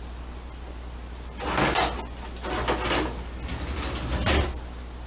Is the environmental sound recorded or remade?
recorded